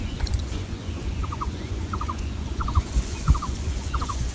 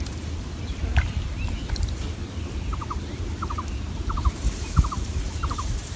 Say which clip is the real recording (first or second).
second